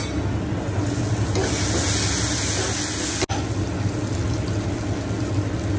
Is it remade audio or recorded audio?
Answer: recorded